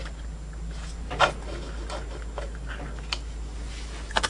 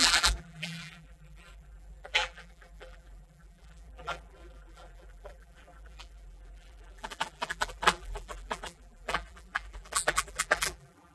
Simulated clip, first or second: second